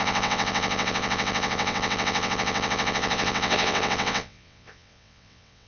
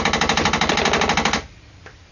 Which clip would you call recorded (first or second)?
second